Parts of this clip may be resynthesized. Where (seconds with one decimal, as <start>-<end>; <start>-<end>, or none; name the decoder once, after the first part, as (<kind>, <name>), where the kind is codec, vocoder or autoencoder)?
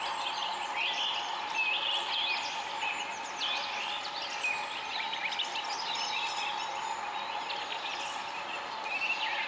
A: none